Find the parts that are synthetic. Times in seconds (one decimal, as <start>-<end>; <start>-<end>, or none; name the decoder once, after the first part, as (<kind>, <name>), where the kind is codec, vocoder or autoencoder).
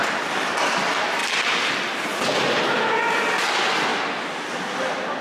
none